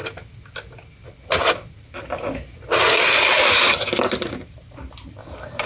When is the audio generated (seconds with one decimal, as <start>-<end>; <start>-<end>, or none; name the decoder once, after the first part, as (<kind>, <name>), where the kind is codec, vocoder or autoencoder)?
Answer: 3.4-5.7 (vocoder, BigVGAN v2)